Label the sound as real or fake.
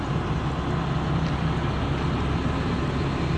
real